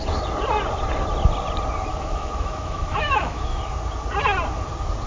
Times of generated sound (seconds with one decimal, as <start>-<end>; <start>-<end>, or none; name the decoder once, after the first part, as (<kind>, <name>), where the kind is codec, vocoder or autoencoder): 1.9-3.6 (autoencoder, DAC-VAE)